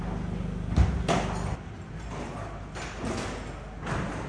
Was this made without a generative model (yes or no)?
yes